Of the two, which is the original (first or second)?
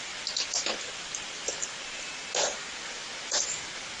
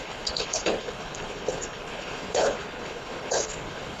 first